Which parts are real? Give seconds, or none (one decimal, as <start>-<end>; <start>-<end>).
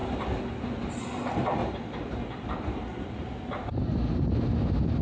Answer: 0.0-5.0